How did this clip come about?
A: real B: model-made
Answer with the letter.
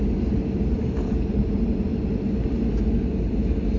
A